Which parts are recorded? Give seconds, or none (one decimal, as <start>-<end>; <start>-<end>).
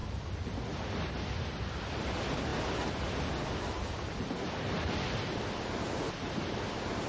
0.0-7.1